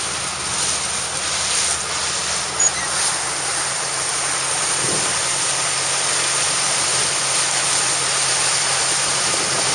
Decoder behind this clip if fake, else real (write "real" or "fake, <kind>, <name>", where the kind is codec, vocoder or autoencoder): real